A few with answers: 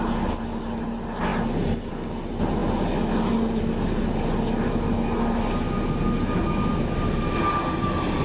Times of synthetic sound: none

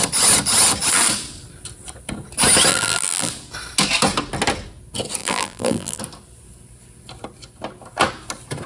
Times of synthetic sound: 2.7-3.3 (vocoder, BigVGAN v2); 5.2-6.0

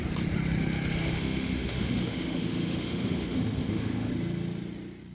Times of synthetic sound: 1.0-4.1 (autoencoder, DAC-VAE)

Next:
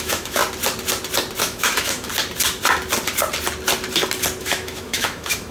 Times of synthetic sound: 0.0-0.4 (autoencoder, DAC-VAE); 1.4-2.1; 4.4-5.5

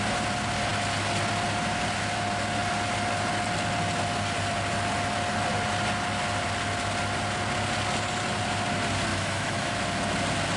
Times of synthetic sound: 9.1-9.7 (autoencoder, DAC-VAE)